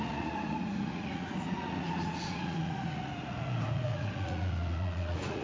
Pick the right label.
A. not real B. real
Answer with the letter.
A